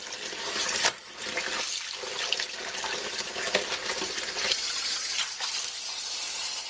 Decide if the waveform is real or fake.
real